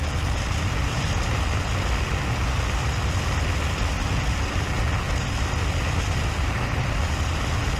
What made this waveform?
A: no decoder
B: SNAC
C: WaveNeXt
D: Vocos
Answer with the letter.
A